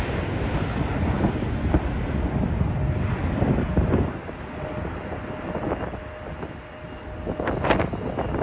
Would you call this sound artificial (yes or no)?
no